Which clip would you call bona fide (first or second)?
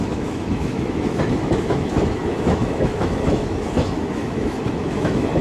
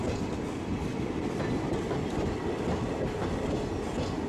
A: second